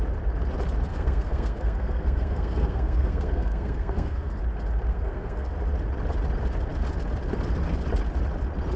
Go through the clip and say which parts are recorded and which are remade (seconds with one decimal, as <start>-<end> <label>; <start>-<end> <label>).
0.0-0.9 recorded; 0.9-4.4 remade; 4.4-4.9 recorded; 4.9-5.5 remade; 5.5-8.8 recorded